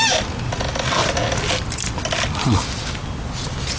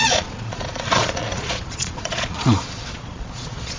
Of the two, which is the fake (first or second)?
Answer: second